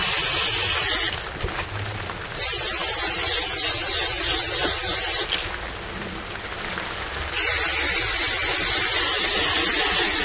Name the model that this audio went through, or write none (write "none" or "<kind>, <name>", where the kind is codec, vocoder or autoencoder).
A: none